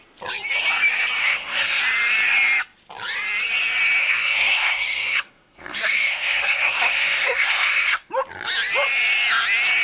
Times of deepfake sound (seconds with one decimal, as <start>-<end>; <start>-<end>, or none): 1.2-1.8; 4.0-8.1